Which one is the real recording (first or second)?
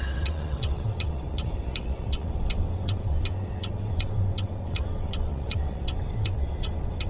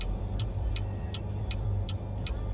second